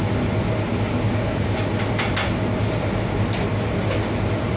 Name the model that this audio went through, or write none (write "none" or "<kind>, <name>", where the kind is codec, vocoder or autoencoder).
none